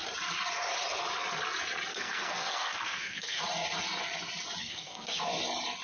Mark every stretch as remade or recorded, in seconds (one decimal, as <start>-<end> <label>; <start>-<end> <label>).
0.0-1.9 recorded; 1.9-3.4 remade; 3.4-4.6 recorded; 4.6-5.2 remade; 5.2-5.8 recorded